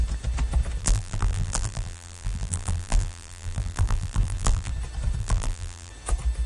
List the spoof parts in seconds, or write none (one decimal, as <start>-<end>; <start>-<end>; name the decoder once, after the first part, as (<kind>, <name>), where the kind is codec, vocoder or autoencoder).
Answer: 0.8-4.7 (vocoder, BigVGAN v2); 5.2-5.9